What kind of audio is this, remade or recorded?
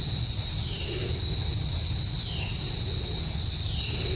recorded